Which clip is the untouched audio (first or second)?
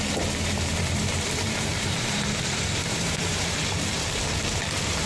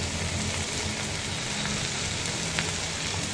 second